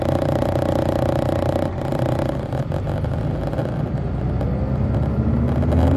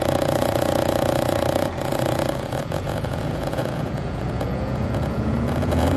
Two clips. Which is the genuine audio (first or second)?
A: first